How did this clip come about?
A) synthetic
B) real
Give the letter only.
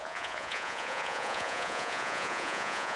A